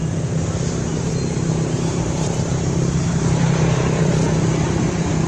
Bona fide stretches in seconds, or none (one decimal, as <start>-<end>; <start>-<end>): 0.0-0.9; 4.1-5.3